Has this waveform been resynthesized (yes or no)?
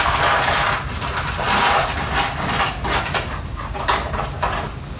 no